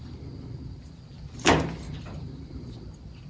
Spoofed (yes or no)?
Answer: yes